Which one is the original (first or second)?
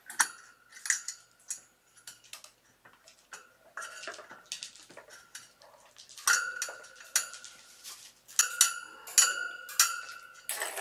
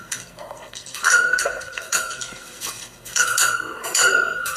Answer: first